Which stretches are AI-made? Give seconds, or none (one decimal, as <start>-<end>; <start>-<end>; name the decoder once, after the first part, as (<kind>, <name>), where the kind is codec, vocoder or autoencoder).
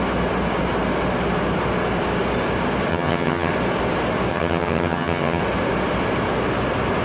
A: 2.9-3.5 (vocoder, HiFi-GAN); 4.3-5.4